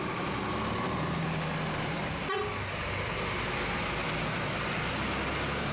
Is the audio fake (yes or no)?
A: no